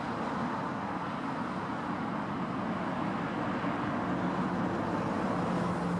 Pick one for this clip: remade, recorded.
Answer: recorded